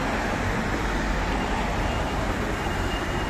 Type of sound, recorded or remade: recorded